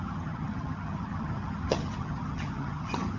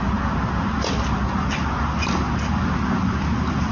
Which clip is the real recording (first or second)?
second